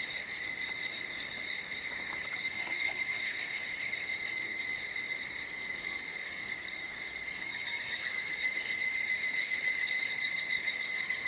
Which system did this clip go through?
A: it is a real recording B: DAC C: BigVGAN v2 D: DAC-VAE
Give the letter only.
B